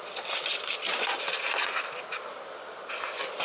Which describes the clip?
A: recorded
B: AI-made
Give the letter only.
A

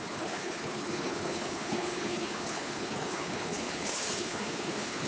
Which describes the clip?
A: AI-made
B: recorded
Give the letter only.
A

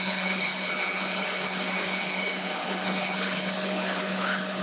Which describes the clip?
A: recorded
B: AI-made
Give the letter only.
B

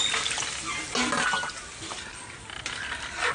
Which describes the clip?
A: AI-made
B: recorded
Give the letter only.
B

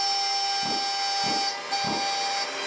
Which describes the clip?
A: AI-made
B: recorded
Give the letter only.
B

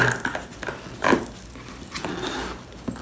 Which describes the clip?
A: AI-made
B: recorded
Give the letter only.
B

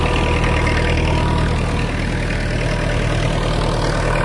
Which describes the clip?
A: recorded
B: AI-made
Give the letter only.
A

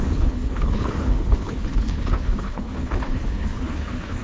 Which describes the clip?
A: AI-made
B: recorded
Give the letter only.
A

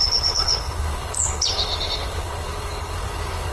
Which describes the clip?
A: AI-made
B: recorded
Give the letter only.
A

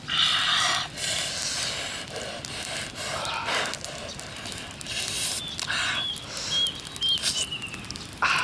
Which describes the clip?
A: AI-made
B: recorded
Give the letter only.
B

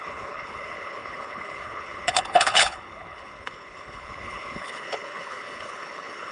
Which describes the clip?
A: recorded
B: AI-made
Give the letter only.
B